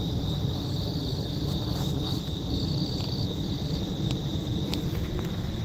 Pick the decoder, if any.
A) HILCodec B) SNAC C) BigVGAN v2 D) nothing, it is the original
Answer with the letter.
D